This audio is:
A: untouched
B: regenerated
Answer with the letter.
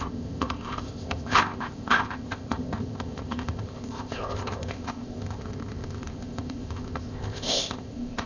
B